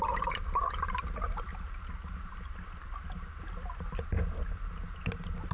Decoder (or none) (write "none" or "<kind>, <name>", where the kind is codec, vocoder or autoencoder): none